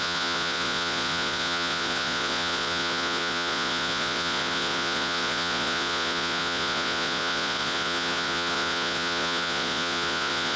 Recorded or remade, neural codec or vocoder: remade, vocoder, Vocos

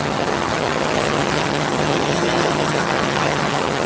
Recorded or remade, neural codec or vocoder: remade, vocoder, HiFi-GAN